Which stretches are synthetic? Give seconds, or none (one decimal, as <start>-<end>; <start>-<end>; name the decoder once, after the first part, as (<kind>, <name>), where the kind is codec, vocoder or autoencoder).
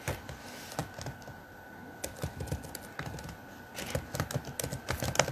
none